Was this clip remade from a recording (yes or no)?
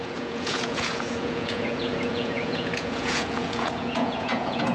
yes